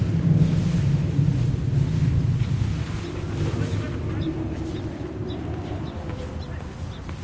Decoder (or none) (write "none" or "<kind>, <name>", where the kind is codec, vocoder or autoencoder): none